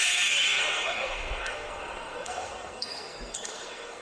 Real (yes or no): no